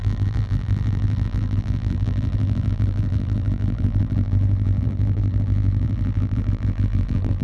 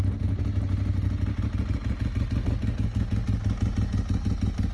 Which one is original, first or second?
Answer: second